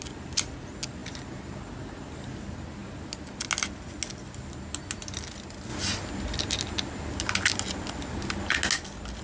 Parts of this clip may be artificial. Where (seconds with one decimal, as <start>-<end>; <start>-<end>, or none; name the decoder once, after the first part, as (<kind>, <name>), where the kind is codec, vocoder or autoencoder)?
none